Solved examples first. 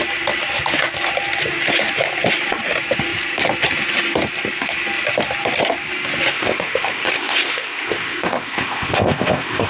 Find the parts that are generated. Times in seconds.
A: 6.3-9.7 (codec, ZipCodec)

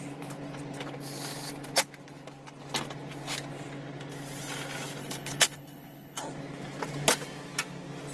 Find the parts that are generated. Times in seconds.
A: 5.0-6.2 (codec, HILCodec)

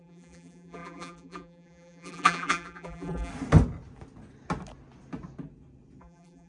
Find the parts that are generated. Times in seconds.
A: 0.0-3.3 (vocoder, BigVGAN v2); 6.0-6.5

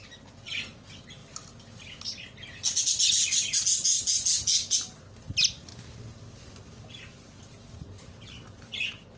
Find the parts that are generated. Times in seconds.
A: none

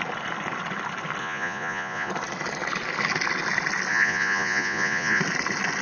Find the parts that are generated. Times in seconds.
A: 1.2-2.1 (vocoder, Vocos); 3.9-5.2